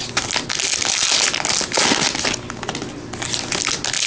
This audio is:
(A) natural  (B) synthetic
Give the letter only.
A